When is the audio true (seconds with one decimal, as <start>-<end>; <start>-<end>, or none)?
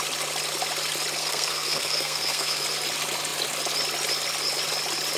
0.0-1.2; 2.6-5.2